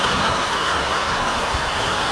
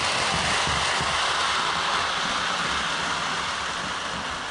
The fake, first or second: first